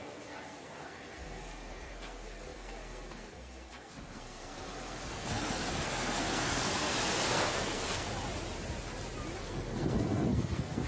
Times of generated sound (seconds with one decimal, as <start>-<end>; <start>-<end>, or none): 0.0-8.1; 9.4-10.9